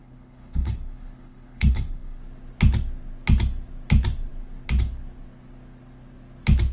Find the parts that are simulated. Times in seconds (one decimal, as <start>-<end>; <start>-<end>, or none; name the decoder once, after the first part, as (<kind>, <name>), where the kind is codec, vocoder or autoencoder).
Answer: 0.0-2.2 (codec, HILCodec)